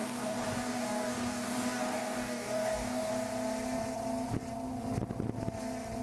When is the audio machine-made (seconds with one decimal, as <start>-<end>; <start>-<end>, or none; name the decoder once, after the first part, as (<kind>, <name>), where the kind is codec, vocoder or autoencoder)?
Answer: 0.0-3.1 (codec, DAC)